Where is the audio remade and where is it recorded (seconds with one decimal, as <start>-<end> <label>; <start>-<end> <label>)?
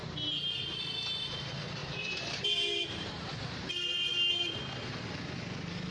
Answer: 0.0-1.8 recorded; 1.8-3.7 remade; 3.7-5.9 recorded